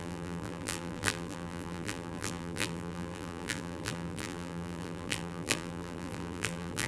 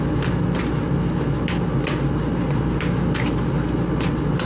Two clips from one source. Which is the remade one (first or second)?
first